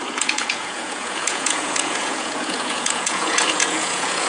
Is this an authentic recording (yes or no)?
no